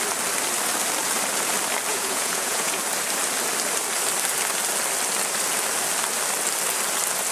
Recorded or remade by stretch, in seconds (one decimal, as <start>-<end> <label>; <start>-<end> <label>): 0.0-1.9 recorded; 1.9-2.8 remade; 2.8-7.3 recorded